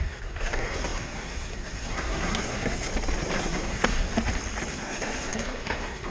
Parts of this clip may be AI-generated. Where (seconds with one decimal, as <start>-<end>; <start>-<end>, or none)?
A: 0.0-2.9; 3.4-4.1; 4.7-6.1